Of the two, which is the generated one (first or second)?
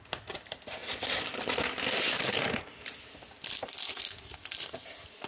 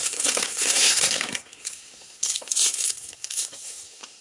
second